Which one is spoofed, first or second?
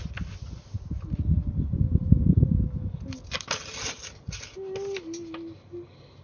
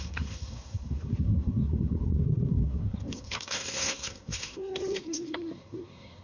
second